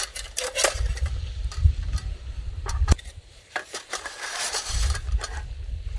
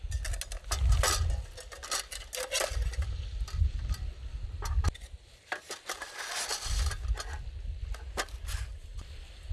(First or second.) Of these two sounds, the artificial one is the first